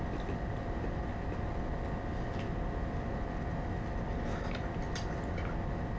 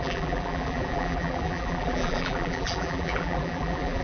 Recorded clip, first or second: first